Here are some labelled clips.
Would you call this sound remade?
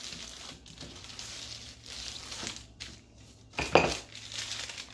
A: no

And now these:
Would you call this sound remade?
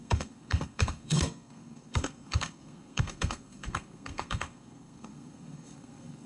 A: yes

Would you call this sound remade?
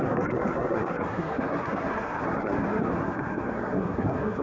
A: yes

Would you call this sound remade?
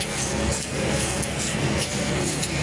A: yes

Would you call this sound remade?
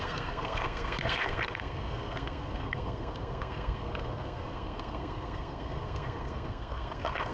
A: yes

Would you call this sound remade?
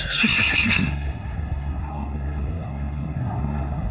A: yes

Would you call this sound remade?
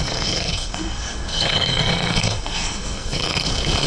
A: yes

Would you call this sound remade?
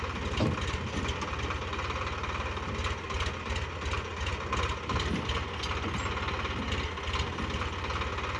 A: no